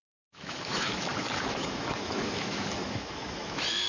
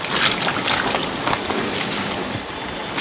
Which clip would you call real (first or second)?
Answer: second